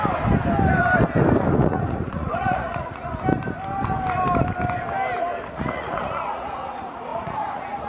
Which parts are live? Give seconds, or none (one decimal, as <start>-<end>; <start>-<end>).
0.0-1.5; 3.1-5.5